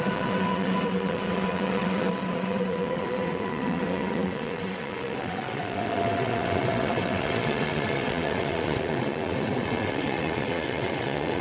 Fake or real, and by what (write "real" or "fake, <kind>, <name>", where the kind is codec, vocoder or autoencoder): fake, vocoder, WaveNeXt